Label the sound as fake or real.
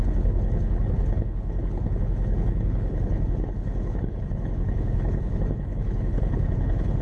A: fake